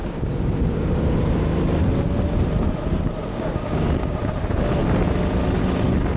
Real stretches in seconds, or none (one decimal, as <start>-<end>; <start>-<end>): 0.9-3.3; 4.3-6.2